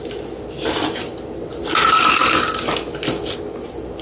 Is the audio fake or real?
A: real